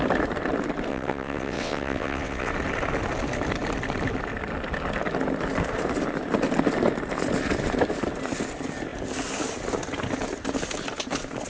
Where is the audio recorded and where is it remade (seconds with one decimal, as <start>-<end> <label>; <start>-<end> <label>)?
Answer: 0.0-0.9 recorded; 0.9-2.5 remade; 2.5-11.5 recorded